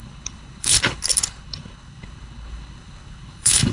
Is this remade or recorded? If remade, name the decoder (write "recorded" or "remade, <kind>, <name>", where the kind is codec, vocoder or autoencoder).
remade, codec, HILCodec